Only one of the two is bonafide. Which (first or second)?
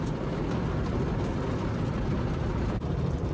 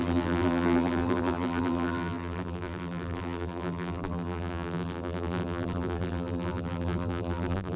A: first